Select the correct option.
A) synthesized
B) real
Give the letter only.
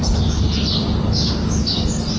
B